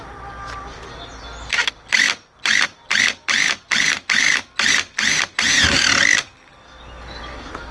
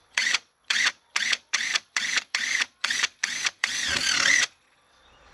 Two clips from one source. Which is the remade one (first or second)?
second